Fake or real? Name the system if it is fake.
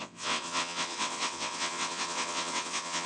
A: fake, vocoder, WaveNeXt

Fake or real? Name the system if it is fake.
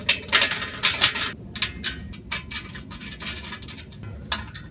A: real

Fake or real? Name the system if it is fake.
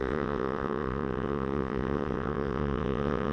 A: fake, vocoder, WaveNeXt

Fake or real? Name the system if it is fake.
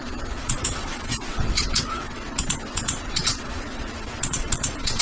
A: fake, vocoder, WaveNeXt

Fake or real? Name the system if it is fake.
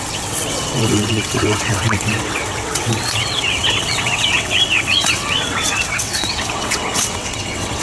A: fake, vocoder, WaveNeXt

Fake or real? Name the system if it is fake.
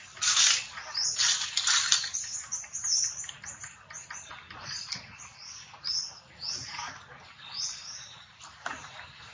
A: real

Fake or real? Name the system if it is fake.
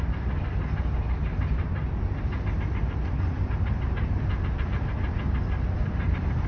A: real